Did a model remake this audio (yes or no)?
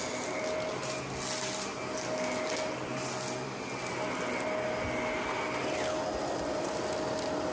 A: no